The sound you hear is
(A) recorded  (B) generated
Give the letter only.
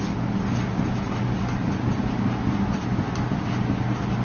A